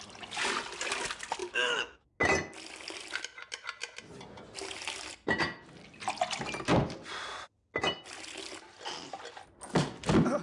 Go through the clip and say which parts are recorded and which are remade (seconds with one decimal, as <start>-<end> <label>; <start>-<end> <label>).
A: 0.0-1.4 recorded; 1.4-2.2 remade; 2.2-10.4 recorded